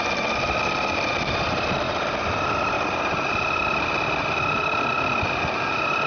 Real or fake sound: real